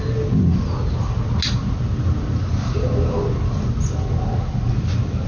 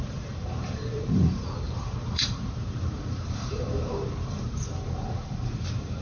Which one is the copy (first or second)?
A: second